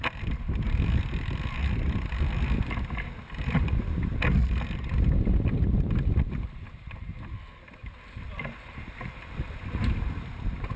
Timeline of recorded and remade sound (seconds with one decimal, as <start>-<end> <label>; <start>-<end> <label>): 0.0-10.8 recorded